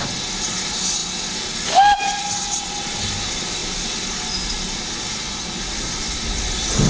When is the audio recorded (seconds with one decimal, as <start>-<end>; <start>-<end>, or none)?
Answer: 0.0-6.9

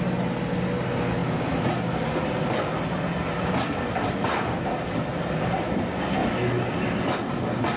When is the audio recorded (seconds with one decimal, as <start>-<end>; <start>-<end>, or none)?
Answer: 0.0-7.8

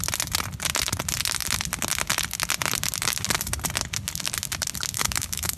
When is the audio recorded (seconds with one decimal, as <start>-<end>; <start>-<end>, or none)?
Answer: 0.0-4.9

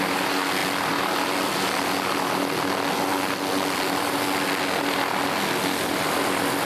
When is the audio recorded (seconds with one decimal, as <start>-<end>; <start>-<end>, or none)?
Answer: 0.0-6.7

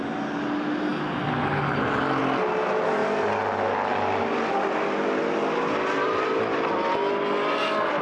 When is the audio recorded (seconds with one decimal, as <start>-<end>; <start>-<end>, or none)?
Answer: 0.0-8.0

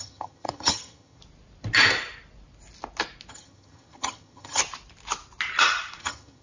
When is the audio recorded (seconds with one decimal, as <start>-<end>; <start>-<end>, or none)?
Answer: 1.2-3.3; 4.6-6.0

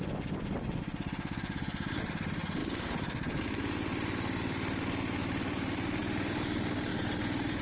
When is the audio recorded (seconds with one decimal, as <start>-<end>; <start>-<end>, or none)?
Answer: 0.0-7.6